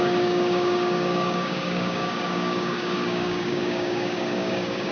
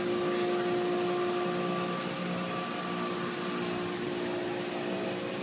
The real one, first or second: second